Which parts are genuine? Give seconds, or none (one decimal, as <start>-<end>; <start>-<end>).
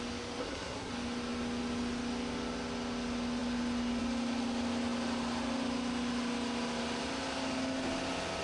0.0-0.4; 0.9-8.4